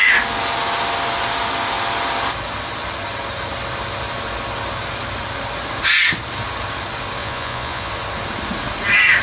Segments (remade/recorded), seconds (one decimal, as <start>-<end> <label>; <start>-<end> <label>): 0.0-7.2 recorded; 7.2-7.9 remade; 7.9-9.2 recorded